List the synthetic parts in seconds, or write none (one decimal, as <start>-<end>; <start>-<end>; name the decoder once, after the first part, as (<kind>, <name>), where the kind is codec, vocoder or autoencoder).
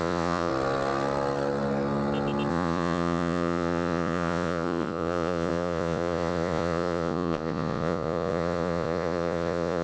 0.0-0.5 (vocoder, Vocos); 2.5-9.8